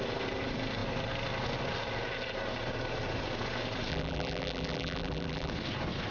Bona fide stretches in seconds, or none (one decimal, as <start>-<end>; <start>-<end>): 0.0-3.9; 5.5-6.1